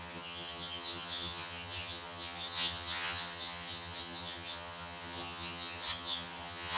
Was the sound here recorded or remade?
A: remade